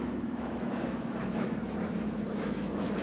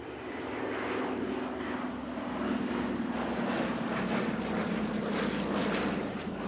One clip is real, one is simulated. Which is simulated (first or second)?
first